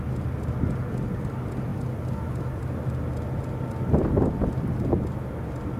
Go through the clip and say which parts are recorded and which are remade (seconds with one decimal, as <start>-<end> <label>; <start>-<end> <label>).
0.0-5.8 recorded